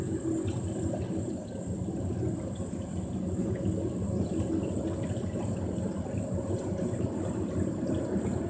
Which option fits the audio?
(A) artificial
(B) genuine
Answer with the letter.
B